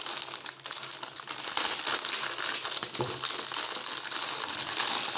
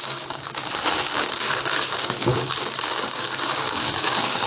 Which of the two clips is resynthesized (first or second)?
second